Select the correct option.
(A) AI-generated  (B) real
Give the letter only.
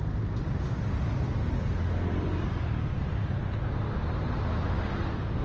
B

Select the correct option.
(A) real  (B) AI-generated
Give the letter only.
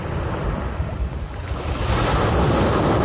A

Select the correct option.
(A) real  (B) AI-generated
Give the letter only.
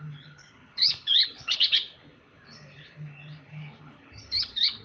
B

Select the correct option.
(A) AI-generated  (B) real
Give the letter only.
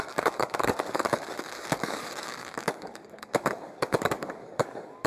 A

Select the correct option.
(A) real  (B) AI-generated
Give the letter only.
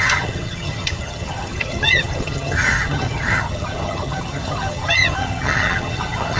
B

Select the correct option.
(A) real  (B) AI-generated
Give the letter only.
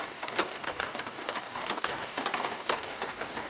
B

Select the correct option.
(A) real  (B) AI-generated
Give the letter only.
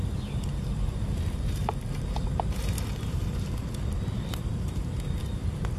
B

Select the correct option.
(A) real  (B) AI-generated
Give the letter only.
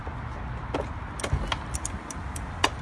A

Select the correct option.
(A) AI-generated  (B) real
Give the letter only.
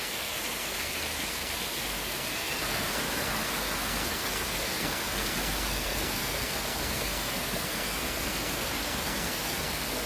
A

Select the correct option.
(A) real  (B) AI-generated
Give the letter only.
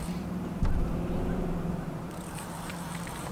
B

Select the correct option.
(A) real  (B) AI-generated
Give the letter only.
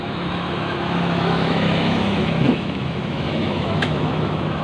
B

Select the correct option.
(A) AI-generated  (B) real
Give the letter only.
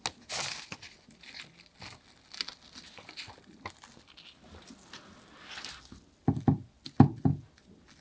B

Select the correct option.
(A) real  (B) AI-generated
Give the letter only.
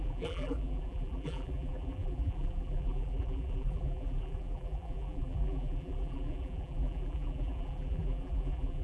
B